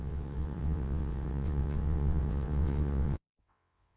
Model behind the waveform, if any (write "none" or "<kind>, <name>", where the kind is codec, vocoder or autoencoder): vocoder, WaveNeXt